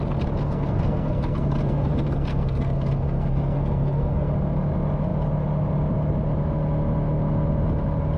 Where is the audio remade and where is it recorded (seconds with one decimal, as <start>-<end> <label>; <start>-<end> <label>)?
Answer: 0.0-0.4 recorded; 0.4-4.3 remade; 4.3-8.2 recorded